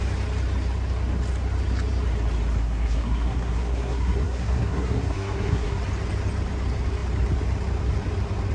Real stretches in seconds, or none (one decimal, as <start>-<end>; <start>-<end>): 0.0-2.6; 5.8-8.5